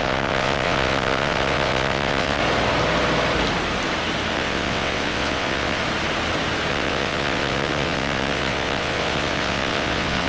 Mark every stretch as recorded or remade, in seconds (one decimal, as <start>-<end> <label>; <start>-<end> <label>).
0.0-2.4 remade; 2.4-4.3 recorded; 4.3-5.8 remade; 5.8-6.7 recorded; 6.7-10.3 remade